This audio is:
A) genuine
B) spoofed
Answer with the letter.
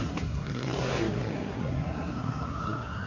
B